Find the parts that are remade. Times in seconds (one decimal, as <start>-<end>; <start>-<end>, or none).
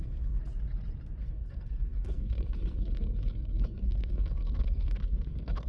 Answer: 0.0-0.4; 1.2-5.7